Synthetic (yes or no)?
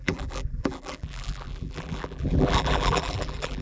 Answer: yes